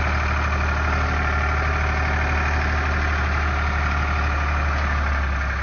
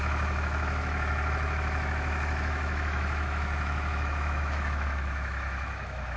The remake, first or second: second